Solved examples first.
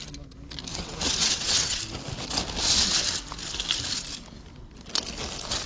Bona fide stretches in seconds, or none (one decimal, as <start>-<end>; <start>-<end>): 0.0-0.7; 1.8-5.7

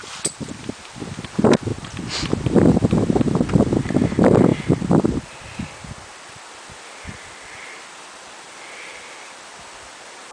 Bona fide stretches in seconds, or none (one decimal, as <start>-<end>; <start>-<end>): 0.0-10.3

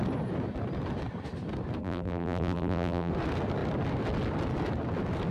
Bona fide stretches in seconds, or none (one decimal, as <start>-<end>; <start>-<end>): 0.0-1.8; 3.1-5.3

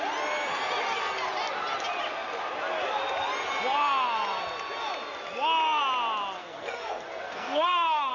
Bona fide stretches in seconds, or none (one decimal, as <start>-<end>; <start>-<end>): 0.0-6.4

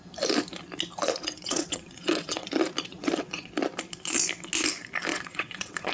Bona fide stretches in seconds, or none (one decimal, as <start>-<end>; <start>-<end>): 0.0-1.2; 2.5-2.9; 3.5-5.1